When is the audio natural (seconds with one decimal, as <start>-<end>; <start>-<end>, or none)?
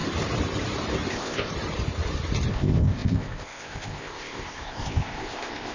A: 0.0-1.1; 1.5-2.5